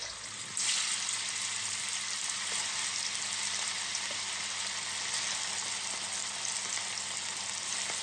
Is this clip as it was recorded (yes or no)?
yes